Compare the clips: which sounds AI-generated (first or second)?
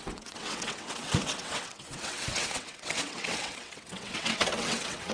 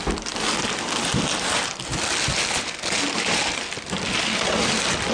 first